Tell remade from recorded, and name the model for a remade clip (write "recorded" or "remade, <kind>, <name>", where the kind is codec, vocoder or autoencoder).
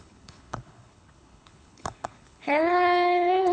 remade, codec, HILCodec